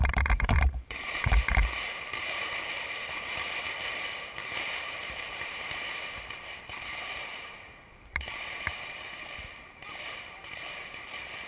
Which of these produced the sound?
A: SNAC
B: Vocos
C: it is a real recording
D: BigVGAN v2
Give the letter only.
D